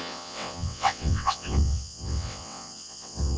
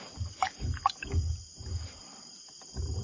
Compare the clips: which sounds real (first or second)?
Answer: second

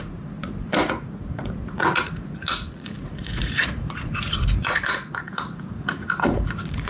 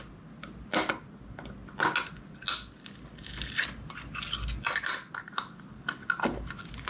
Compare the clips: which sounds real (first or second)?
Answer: second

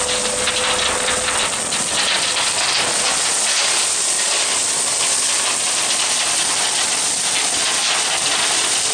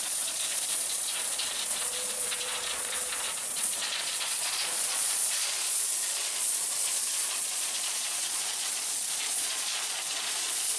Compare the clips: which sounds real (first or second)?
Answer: first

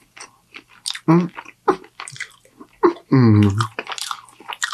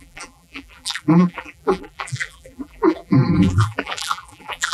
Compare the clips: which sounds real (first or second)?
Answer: first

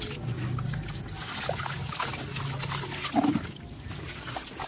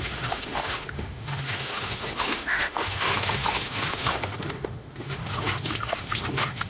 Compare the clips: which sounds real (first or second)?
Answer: first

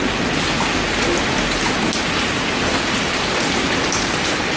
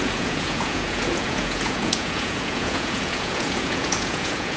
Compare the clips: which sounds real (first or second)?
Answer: first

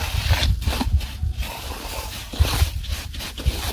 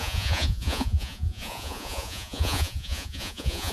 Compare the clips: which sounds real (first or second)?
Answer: first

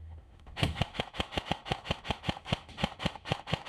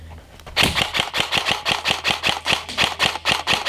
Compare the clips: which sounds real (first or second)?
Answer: second